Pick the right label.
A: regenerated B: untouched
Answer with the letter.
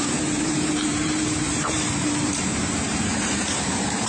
A